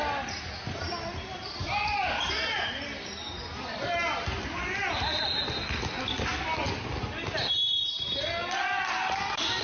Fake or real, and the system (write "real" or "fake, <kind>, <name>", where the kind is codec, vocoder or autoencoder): real